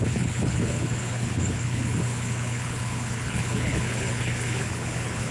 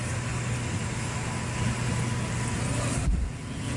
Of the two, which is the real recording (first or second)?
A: second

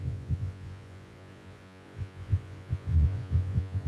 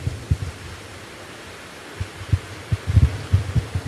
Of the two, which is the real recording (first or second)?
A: second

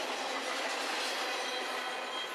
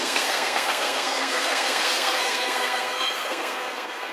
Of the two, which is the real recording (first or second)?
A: first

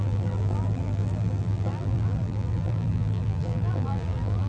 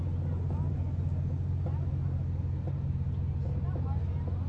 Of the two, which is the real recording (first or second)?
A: second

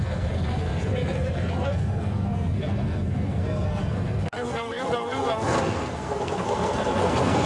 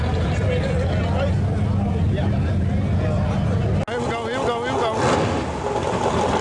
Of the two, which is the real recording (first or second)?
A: second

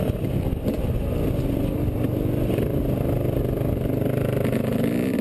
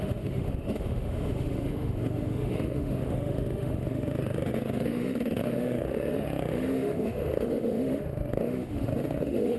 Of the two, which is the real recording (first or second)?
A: first